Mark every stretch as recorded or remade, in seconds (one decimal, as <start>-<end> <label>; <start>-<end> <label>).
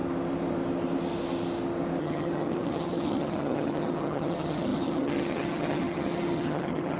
0.0-2.0 recorded; 2.0-7.0 remade